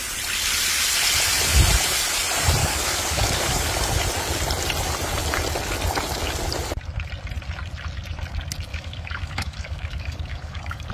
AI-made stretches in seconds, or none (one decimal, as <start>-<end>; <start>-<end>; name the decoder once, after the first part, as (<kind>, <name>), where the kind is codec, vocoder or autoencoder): 2.6-3.7 (codec, DAC); 8.7-10.9